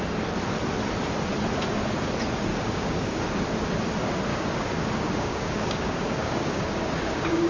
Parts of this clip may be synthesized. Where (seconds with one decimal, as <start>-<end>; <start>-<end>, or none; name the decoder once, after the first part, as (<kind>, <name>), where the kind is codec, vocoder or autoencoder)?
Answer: 2.5-3.2 (codec, DAC); 4.3-7.5